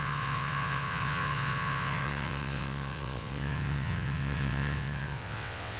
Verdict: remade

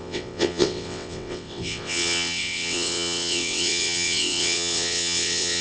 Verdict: remade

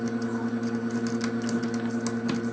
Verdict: recorded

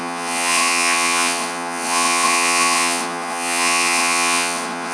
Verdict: remade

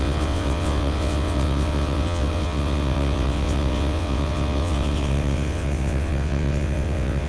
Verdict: remade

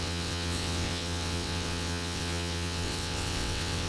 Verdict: remade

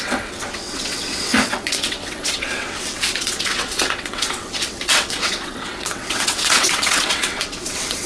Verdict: remade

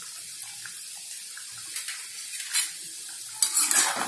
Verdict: recorded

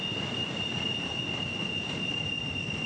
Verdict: recorded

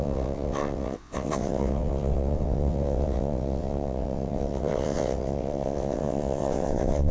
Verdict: remade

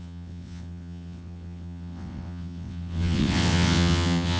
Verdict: remade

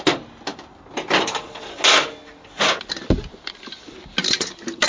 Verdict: recorded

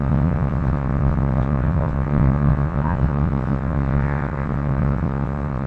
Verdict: remade